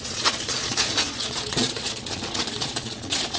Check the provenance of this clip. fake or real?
fake